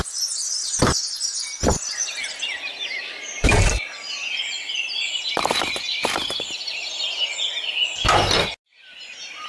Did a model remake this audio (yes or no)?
no